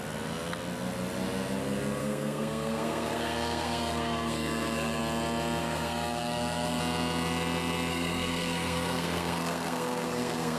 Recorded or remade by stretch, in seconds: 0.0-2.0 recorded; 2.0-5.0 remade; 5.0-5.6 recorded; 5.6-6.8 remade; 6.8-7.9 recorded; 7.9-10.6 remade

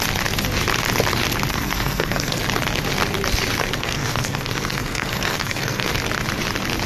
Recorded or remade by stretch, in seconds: 0.0-1.5 recorded; 1.5-2.4 remade; 2.4-3.6 recorded; 3.6-5.9 remade; 5.9-6.9 recorded